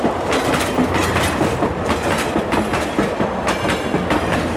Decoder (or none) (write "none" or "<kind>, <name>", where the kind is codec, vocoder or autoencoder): none